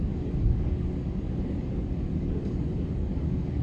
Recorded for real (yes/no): no